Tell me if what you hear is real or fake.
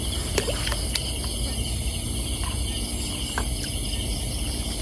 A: real